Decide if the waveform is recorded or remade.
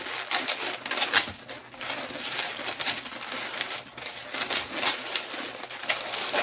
recorded